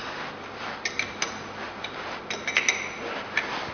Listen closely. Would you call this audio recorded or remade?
recorded